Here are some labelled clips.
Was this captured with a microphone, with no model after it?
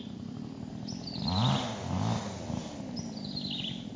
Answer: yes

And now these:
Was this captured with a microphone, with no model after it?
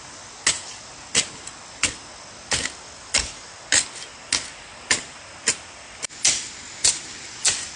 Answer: yes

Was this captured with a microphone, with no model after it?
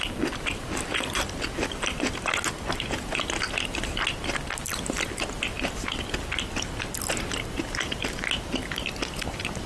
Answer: yes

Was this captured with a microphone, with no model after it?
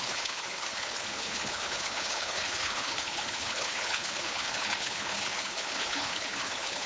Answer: no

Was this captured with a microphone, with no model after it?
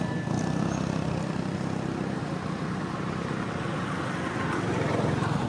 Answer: yes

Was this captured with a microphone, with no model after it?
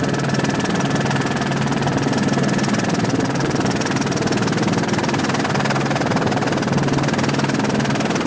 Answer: yes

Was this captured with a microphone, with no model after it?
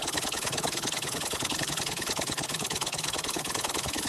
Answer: no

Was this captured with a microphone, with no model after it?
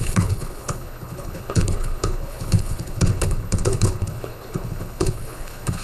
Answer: no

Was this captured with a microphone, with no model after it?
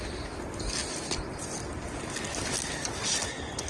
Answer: yes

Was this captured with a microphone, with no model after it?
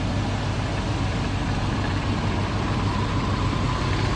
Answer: yes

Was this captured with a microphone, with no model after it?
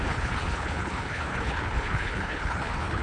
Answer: no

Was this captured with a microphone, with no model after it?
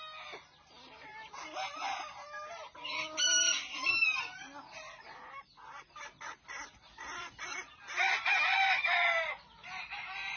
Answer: yes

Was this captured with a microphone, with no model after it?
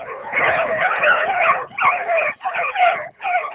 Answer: no